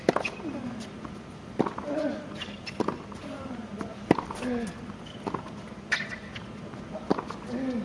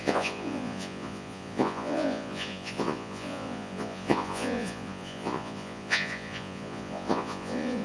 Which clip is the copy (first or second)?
second